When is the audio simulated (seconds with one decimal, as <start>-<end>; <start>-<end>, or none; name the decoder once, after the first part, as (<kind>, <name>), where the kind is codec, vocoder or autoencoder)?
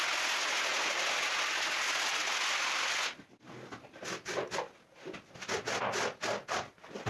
none